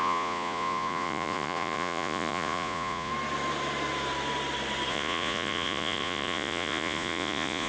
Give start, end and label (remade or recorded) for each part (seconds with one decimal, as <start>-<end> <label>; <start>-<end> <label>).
0.0-3.1 remade; 3.1-4.9 recorded; 4.9-7.7 remade